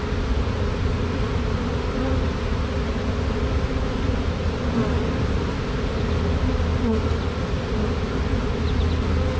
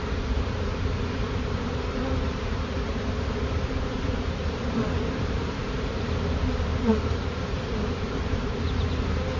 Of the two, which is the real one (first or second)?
first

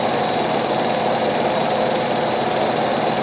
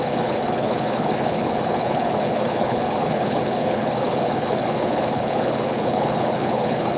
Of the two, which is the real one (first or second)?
first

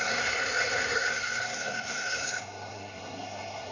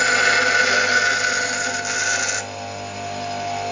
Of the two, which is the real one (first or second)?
second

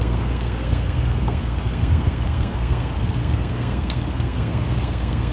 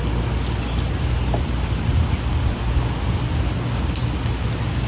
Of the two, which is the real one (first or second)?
second